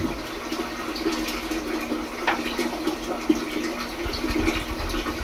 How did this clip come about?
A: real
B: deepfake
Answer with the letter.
A